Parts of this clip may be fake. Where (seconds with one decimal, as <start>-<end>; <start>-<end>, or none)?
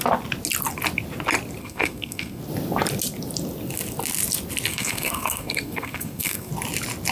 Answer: 1.6-2.4; 4.7-6.5